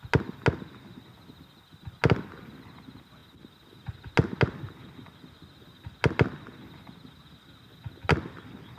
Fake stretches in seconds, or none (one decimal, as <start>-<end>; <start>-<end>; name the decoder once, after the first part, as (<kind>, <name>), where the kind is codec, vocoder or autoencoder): none

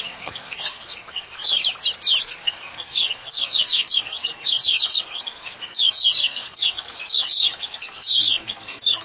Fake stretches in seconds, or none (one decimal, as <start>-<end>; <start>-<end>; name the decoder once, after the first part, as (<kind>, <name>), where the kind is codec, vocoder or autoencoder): 0.0-1.6 (codec, SNAC); 2.2-9.0